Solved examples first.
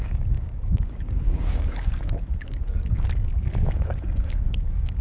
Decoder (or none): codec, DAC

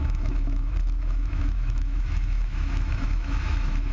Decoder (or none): autoencoder, DAC-VAE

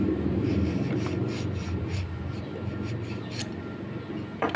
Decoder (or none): none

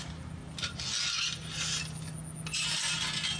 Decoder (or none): none